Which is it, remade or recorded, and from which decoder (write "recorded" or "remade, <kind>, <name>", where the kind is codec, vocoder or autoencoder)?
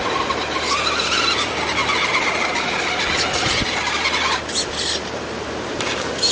recorded